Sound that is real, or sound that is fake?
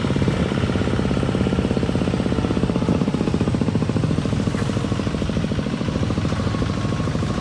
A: real